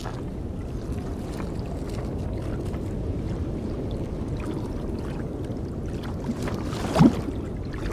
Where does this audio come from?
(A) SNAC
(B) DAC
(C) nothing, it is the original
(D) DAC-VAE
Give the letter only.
C